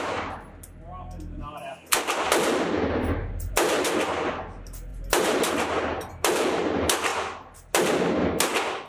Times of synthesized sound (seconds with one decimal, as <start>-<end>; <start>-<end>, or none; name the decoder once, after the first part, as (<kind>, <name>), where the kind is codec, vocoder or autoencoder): 4.9-6.1 (vocoder, BigVGAN v2)